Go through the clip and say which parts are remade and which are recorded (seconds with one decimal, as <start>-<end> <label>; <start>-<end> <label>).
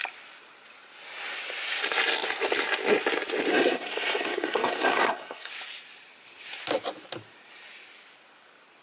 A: 0.0-3.5 recorded; 3.5-5.5 remade; 5.5-8.8 recorded